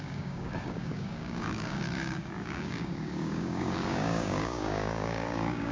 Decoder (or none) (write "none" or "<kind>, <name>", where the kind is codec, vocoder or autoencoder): codec, DAC